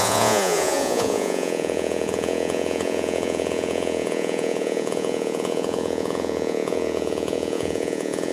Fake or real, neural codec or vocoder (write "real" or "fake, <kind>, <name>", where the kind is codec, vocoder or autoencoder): fake, vocoder, Vocos